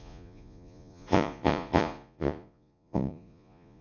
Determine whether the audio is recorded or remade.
remade